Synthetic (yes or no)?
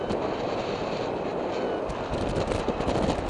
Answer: no